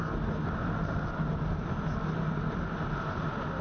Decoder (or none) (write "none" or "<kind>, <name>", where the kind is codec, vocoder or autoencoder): none